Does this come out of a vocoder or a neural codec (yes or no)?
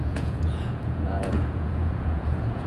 yes